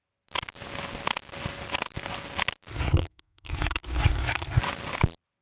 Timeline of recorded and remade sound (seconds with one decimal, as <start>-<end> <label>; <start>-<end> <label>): 0.0-2.7 recorded; 2.7-4.6 remade; 4.6-5.4 recorded